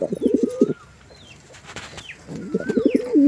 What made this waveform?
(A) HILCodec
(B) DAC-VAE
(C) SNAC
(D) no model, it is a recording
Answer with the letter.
D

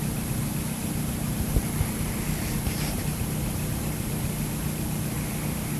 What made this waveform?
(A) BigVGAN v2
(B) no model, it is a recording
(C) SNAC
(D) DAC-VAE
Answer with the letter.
B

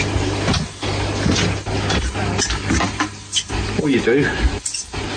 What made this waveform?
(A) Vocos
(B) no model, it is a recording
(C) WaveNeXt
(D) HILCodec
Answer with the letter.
B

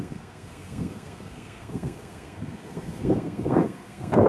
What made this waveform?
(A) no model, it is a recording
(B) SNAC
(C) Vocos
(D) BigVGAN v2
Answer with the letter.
B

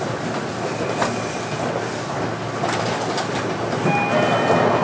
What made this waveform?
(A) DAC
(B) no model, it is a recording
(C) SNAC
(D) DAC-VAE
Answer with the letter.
B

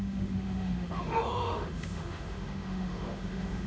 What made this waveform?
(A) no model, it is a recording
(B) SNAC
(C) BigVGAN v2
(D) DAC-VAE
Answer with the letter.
D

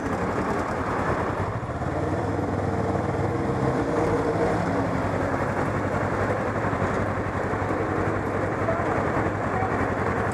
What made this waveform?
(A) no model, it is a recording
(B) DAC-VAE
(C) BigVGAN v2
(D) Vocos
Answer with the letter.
C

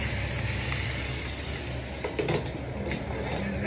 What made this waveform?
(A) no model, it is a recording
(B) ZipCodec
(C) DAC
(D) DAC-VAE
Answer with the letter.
A